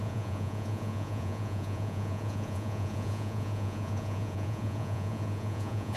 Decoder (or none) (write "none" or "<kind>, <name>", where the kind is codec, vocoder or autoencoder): vocoder, Vocos